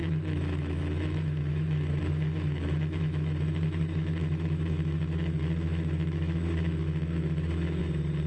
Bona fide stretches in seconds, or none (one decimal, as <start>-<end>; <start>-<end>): 7.8-8.3